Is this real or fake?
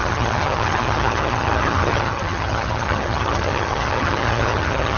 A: fake